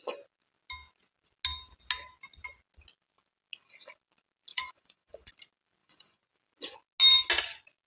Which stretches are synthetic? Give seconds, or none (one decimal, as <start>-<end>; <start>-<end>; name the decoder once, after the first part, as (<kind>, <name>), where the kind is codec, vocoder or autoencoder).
4.5-5.3 (vocoder, Vocos); 5.8-6.3